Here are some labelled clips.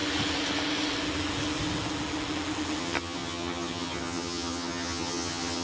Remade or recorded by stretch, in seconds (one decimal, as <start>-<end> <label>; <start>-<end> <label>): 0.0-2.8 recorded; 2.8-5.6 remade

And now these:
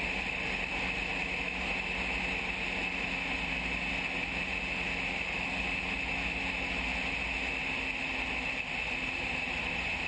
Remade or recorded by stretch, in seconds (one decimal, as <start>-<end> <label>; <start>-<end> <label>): 0.0-10.1 recorded

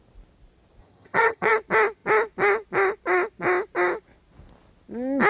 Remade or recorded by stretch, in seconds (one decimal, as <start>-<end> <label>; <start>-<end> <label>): 0.0-0.8 recorded; 0.8-1.5 remade; 1.5-5.3 recorded

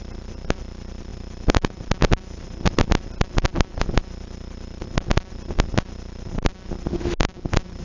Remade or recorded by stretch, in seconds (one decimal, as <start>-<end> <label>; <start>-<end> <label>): 0.0-7.8 recorded